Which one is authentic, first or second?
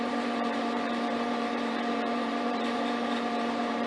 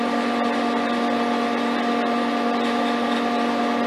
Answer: second